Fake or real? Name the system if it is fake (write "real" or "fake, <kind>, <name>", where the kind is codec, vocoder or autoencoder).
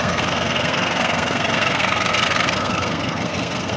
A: fake, codec, SNAC